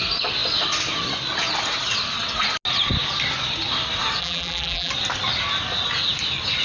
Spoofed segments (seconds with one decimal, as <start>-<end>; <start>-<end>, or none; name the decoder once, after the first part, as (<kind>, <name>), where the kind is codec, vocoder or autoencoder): 4.2-4.9 (vocoder, BigVGAN v2)